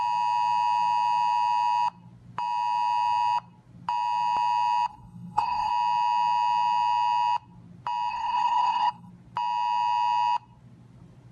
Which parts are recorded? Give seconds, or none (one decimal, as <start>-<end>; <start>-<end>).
0.0-4.9; 5.7-8.1; 9.1-11.3